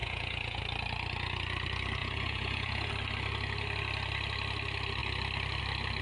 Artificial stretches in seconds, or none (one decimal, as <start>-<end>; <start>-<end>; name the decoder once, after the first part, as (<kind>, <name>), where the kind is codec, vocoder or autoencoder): 0.0-0.6 (vocoder, Vocos); 2.0-2.9